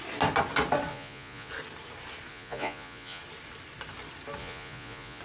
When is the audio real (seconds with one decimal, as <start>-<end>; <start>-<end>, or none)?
0.0-0.9; 1.5-2.3; 3.2-4.4